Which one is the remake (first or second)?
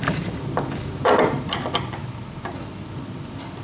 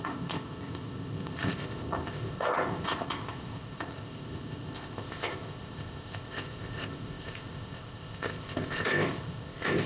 second